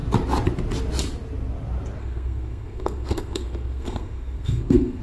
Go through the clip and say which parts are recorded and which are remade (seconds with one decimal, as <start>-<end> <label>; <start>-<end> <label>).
0.0-2.0 recorded; 2.0-5.0 remade